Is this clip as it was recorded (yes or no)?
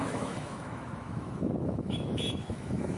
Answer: no